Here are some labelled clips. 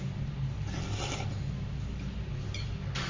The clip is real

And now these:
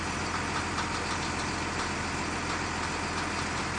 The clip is real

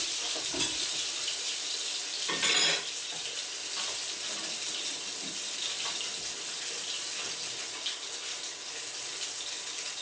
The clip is real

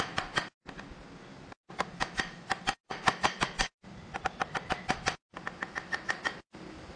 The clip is real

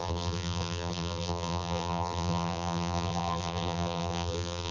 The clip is fake